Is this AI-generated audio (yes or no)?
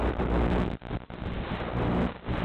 no